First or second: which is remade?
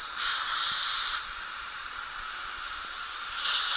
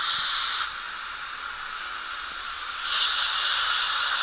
first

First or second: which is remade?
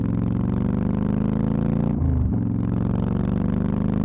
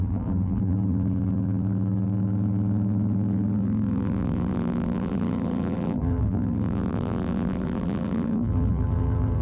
second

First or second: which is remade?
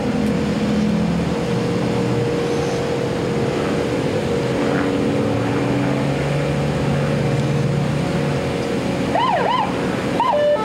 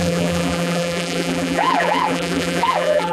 second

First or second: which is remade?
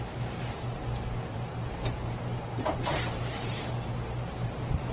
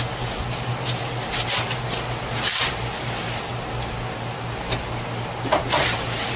first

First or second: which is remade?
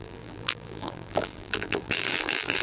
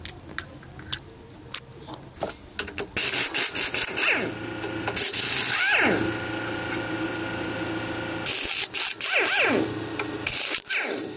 first